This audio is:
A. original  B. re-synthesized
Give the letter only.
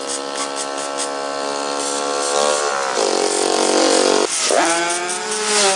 A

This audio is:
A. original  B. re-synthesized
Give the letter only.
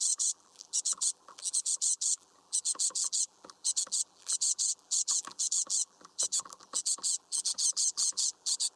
B